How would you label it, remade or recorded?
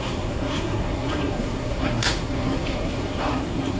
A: remade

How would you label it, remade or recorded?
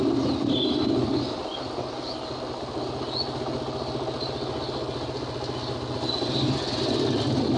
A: recorded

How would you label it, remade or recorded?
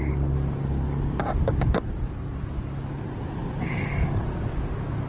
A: recorded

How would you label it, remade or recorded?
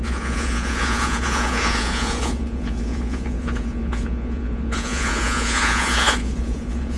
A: remade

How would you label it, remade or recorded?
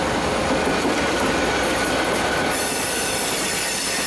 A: recorded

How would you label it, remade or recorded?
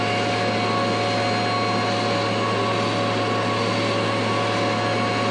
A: recorded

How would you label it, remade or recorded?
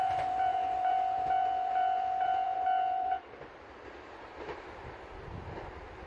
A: remade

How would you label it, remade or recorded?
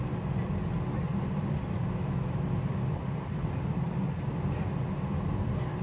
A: recorded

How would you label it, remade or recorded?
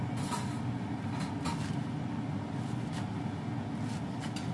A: recorded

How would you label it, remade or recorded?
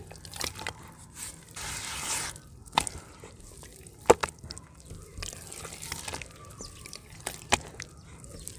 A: recorded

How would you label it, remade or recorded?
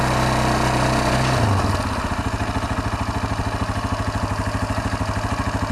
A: recorded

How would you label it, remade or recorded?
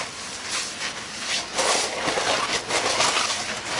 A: recorded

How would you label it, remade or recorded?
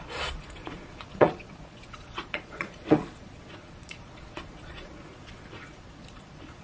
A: remade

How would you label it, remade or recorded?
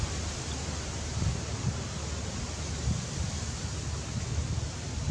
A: recorded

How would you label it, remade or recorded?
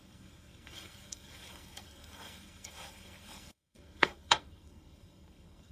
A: remade